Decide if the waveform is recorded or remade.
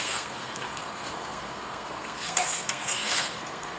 remade